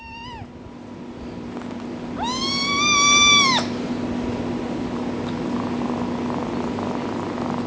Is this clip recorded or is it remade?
recorded